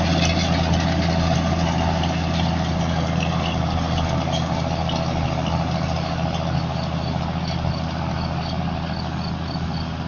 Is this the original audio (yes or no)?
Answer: yes